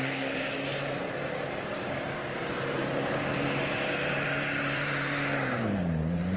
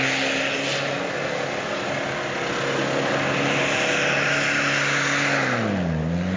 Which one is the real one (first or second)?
second